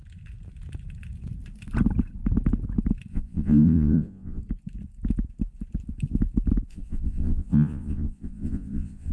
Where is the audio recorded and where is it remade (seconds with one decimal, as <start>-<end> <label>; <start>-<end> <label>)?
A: 0.0-3.1 recorded; 3.1-4.4 remade; 4.4-6.7 recorded; 6.7-9.1 remade